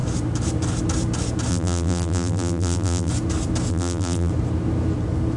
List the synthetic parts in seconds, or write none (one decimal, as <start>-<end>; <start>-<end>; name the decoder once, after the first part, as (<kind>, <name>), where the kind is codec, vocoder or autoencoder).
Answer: 1.5-3.1 (vocoder, BigVGAN v2); 3.7-4.3